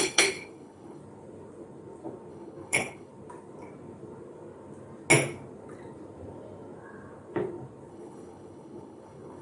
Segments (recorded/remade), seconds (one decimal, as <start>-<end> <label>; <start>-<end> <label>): 0.0-1.0 remade; 1.0-2.3 recorded; 2.3-3.1 remade; 3.1-7.9 recorded; 7.9-9.4 remade